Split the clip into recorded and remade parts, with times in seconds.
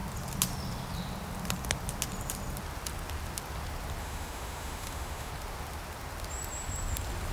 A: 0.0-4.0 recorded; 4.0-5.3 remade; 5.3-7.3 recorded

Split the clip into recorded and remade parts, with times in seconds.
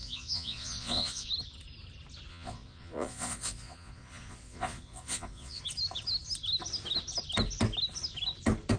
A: 0.0-1.3 remade; 1.3-2.3 recorded; 2.3-5.6 remade; 5.6-8.8 recorded